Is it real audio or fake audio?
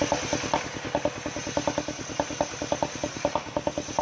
real